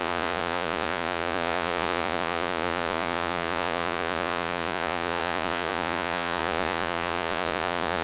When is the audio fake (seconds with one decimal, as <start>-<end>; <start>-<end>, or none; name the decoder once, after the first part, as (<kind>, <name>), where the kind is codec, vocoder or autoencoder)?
0.0-8.0 (vocoder, Vocos)

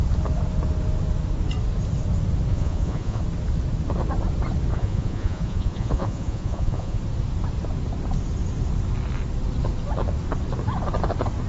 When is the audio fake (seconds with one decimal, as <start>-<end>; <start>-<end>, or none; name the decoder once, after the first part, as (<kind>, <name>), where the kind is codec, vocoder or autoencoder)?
2.5-3.2 (vocoder, Vocos); 4.7-7.0

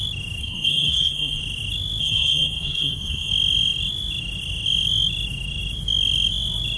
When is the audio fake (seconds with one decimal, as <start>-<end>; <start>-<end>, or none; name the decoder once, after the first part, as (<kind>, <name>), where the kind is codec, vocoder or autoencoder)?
0.4-1.4 (codec, SNAC); 2.0-3.3